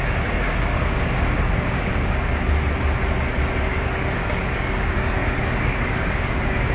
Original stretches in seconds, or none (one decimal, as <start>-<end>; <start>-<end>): 1.9-3.4